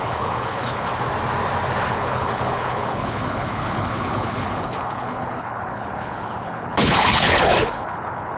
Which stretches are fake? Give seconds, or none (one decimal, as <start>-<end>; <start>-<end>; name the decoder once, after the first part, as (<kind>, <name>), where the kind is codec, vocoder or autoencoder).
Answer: 0.0-0.9 (codec, HILCodec); 1.9-8.4